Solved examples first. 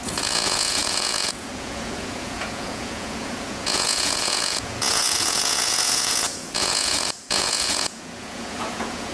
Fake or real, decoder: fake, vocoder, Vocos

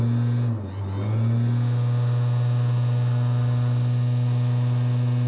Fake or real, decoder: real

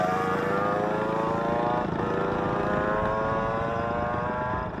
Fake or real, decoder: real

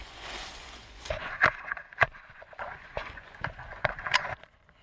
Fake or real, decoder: fake, vocoder, Vocos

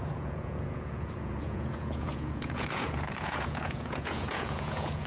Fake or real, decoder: fake, vocoder, Vocos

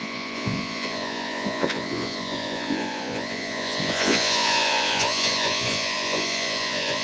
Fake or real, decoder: fake, vocoder, Vocos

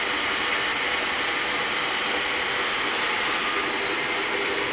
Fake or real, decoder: real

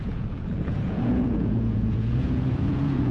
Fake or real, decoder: fake, vocoder, Vocos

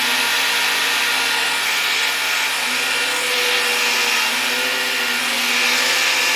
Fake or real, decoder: real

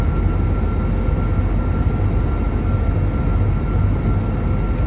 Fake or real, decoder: real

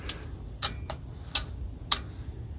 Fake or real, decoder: real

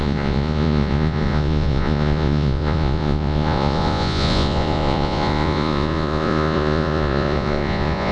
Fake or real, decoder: fake, vocoder, Vocos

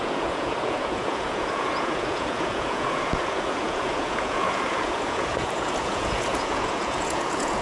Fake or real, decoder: fake, vocoder, Vocos